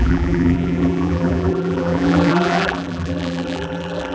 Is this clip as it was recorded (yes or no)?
no